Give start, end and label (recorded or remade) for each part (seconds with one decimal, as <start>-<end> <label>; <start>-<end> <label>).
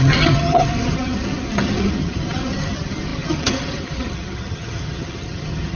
0.0-5.8 remade